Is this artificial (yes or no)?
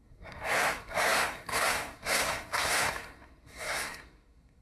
yes